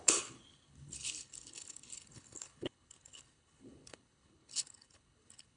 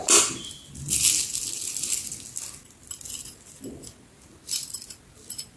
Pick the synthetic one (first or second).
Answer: first